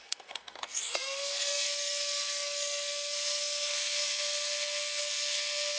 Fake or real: fake